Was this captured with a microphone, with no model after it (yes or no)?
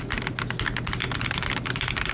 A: yes